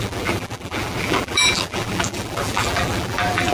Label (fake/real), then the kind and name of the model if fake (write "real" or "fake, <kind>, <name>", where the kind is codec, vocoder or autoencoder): fake, vocoder, BigVGAN v2